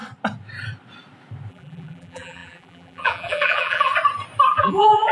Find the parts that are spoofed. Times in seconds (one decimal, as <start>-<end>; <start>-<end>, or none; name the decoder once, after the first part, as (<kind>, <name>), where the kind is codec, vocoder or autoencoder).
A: 1.5-3.9 (vocoder, BigVGAN v2); 4.5-5.1